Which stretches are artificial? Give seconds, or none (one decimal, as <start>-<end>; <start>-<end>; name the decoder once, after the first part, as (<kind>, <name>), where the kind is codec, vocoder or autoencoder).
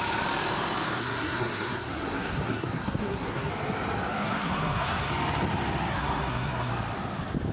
1.0-3.5 (codec, SNAC); 4.1-5.1; 5.9-6.7